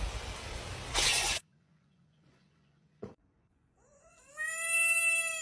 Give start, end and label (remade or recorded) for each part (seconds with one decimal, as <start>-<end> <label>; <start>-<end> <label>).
0.0-1.1 recorded; 1.1-4.3 remade; 4.3-5.4 recorded